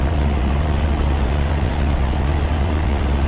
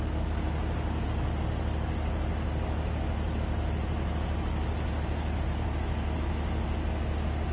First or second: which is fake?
first